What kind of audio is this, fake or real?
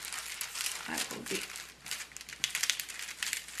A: real